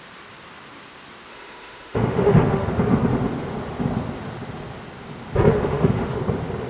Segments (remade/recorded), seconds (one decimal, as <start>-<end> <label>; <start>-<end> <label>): 0.0-1.3 recorded; 1.3-2.7 remade; 2.7-5.5 recorded; 5.5-6.2 remade; 6.2-6.7 recorded